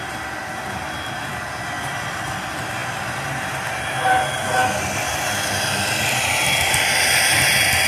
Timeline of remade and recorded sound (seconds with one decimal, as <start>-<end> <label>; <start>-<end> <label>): 0.0-7.9 recorded